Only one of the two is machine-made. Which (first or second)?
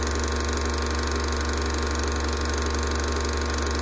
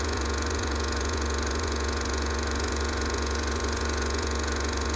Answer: second